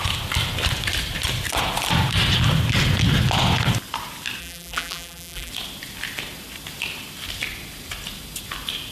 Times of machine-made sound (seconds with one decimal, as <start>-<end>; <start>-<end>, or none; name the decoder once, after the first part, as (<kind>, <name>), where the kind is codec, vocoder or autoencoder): 4.4-5.5 (vocoder, BigVGAN v2)